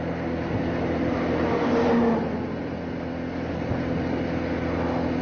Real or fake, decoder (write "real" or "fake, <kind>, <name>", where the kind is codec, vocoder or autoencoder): real